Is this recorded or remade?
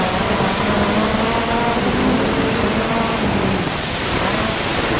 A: remade